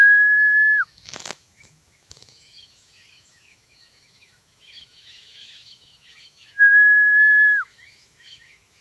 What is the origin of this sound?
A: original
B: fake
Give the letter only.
B